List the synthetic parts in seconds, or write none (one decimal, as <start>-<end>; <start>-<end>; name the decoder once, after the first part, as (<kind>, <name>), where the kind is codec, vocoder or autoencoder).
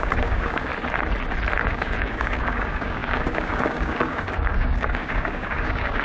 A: 0.0-0.7 (codec, DAC); 1.6-6.0